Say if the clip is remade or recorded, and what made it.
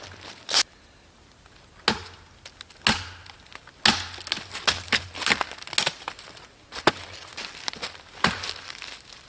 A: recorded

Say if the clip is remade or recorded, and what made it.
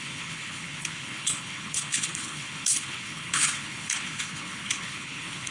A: remade, codec, HILCodec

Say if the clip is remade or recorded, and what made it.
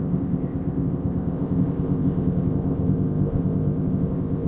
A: remade, codec, ZipCodec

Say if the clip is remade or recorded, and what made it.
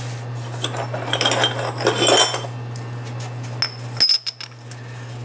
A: recorded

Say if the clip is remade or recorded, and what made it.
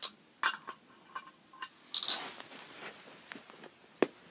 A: recorded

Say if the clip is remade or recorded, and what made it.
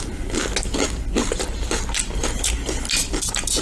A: recorded